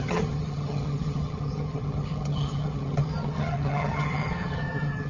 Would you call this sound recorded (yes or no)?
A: no